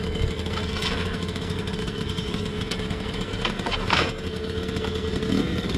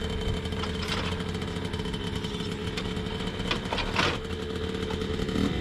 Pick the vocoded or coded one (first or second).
first